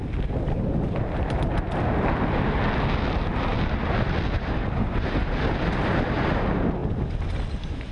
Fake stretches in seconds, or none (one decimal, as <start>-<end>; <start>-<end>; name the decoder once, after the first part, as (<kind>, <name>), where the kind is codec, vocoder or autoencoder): none